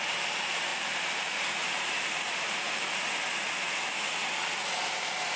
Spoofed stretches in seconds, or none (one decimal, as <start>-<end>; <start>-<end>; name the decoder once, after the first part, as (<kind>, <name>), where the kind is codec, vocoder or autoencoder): 0.7-2.6 (vocoder, BigVGAN v2)